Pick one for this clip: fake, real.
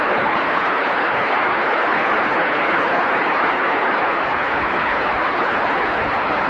fake